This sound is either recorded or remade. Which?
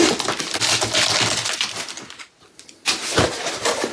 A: recorded